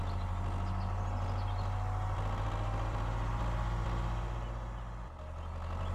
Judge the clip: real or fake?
real